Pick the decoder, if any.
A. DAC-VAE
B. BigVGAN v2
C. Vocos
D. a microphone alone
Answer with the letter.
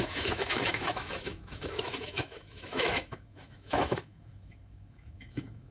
A